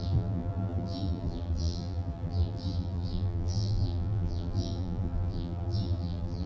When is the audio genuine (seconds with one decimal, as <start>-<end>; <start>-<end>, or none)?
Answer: none